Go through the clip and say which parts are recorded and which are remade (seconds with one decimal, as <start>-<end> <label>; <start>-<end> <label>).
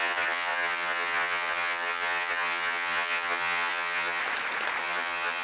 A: 0.0-4.2 remade; 4.2-4.8 recorded; 4.8-5.4 remade